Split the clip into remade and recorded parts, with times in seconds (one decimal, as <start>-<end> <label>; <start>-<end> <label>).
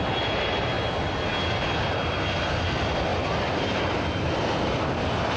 0.0-5.4 recorded